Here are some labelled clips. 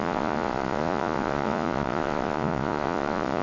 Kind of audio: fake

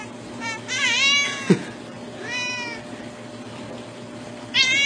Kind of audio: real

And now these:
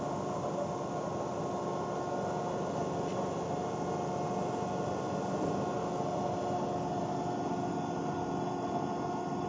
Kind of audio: real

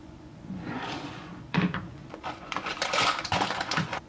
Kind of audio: fake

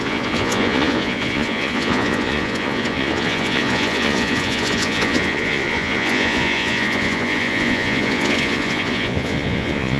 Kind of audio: fake